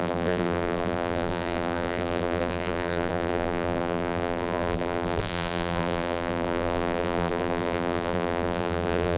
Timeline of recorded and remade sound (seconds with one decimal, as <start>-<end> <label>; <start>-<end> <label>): 0.0-9.2 remade

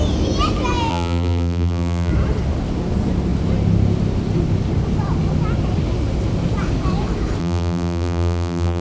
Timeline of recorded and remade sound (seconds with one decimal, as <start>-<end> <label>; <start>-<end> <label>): 0.0-0.9 recorded; 0.9-2.1 remade; 2.1-7.4 recorded; 7.4-8.8 remade

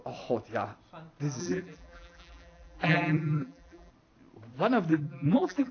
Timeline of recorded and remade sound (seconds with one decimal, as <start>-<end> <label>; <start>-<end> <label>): 0.0-1.4 recorded; 1.4-3.9 remade; 3.9-4.9 recorded; 4.9-5.7 remade

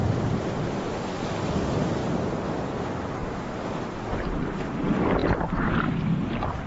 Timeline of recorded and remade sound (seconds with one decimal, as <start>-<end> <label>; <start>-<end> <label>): 0.0-2.0 remade; 2.0-2.8 recorded; 2.8-3.2 remade; 3.2-4.0 recorded; 4.0-6.7 remade

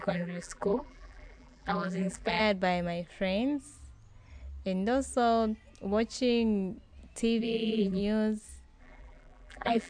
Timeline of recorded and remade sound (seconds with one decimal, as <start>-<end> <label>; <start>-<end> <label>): 0.0-2.4 remade; 2.4-7.4 recorded; 7.4-8.0 remade; 8.0-8.8 recorded; 8.8-9.9 remade

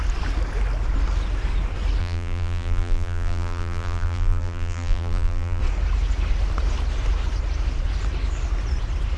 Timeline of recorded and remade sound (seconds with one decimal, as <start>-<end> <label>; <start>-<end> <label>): 0.0-2.0 recorded; 2.0-5.6 remade; 5.6-9.2 recorded

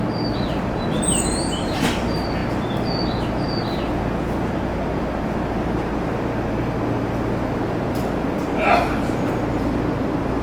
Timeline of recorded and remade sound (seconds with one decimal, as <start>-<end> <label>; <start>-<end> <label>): 0.0-10.4 recorded

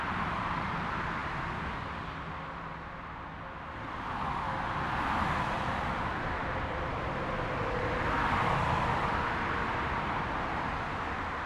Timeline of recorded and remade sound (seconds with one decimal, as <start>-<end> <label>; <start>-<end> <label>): 0.0-6.4 recorded; 6.4-7.1 remade; 7.1-11.5 recorded